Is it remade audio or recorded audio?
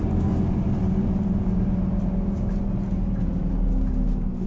recorded